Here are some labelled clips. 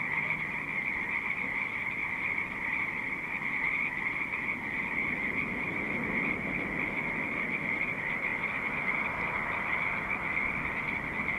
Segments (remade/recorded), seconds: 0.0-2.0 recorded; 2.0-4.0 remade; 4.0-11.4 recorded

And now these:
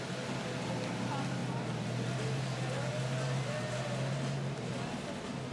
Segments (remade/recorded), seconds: 0.0-5.5 recorded

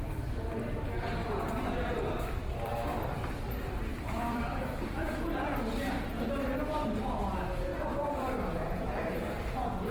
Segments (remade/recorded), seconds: 0.0-1.2 recorded; 1.2-6.3 remade; 6.3-7.7 recorded; 7.7-8.8 remade; 8.8-9.9 recorded

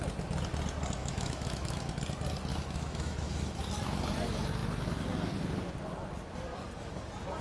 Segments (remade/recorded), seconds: 0.0-1.0 recorded; 1.0-1.9 remade; 1.9-2.5 recorded; 2.5-3.7 remade; 3.7-7.4 recorded

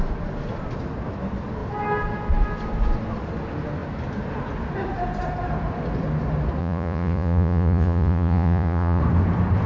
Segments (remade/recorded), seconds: 0.0-6.6 recorded; 6.6-9.0 remade; 9.0-9.7 recorded

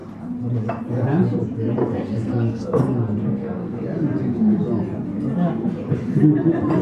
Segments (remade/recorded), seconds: 0.0-1.8 recorded; 1.8-2.8 remade; 2.8-3.2 recorded; 3.2-3.8 remade; 3.8-6.8 recorded